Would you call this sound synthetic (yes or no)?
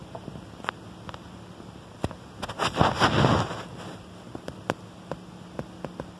no